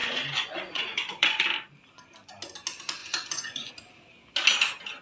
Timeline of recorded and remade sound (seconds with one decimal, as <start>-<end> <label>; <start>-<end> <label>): 0.0-1.4 remade; 1.4-3.0 recorded; 3.0-3.7 remade; 3.7-5.0 recorded